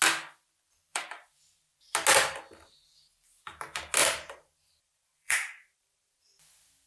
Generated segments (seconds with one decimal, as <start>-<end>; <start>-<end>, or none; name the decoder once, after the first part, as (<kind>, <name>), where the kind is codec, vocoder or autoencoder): 0.9-1.7 (vocoder, BigVGAN v2); 4.0-6.2